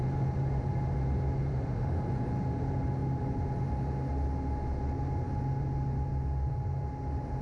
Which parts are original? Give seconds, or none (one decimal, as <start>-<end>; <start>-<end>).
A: 0.0-1.5; 2.0-7.4